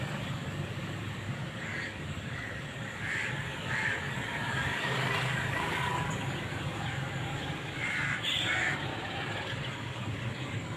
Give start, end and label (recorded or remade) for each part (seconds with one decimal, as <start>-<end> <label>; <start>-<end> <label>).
0.0-8.9 remade; 8.9-9.7 recorded; 9.7-10.8 remade